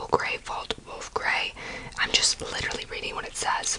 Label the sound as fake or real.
real